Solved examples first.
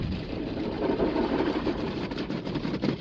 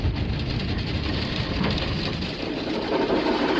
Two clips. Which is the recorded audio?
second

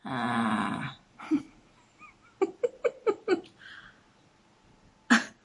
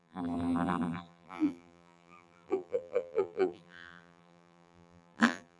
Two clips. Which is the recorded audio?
first